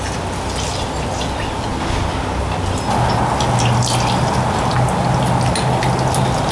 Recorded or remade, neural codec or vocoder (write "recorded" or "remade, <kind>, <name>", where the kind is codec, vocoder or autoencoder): recorded